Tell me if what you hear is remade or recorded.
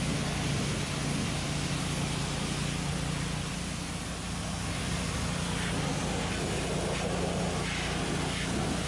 recorded